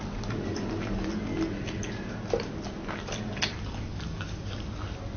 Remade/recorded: recorded